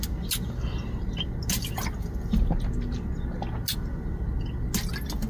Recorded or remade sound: recorded